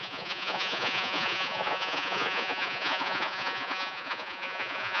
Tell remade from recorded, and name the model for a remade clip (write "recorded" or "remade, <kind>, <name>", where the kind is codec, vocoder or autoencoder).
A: remade, vocoder, Vocos